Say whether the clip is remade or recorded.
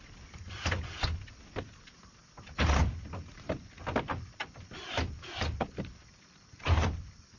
recorded